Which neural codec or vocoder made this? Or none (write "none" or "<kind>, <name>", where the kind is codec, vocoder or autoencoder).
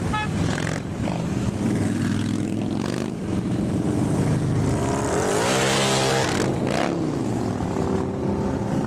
none